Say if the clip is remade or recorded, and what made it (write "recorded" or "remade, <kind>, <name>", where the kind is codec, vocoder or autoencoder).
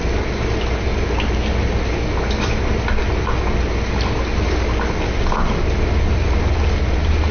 recorded